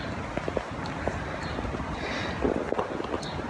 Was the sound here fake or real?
real